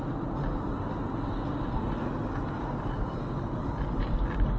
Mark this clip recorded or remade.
recorded